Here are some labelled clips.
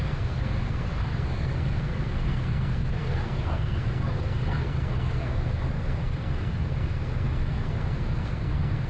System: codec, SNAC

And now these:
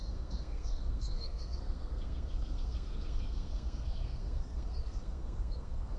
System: codec, SNAC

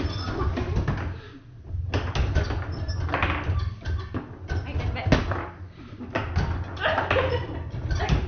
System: none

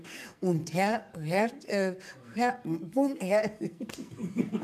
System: codec, SNAC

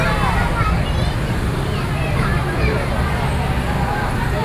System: none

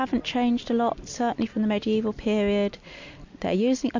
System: none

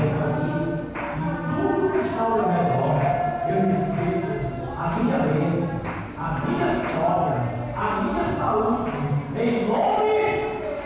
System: none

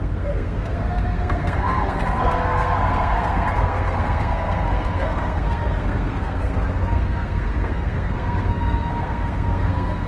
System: codec, SNAC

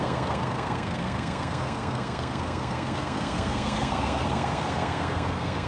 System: codec, SNAC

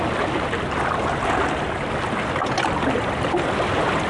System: none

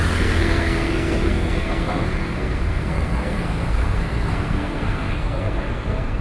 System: codec, SNAC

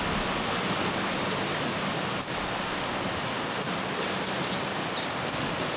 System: none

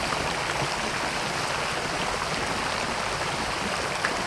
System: none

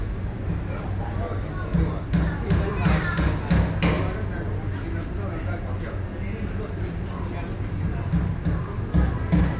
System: none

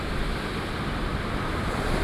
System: none